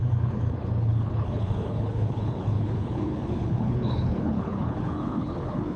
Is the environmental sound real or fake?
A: fake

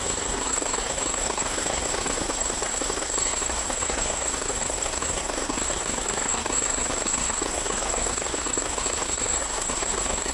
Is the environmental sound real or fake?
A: fake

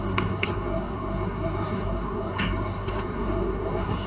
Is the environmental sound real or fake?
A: fake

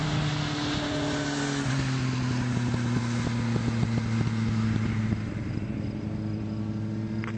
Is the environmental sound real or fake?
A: real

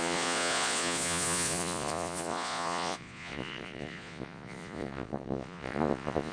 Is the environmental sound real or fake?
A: fake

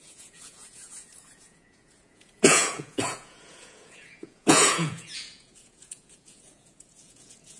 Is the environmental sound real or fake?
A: fake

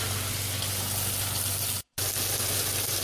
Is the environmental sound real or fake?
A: real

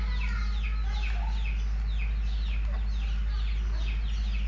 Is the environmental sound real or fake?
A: real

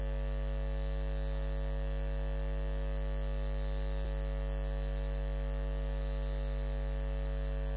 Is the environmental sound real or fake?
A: real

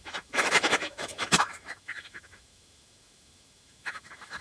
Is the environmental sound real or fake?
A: fake